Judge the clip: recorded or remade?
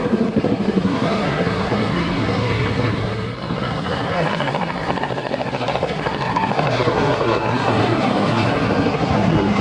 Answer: remade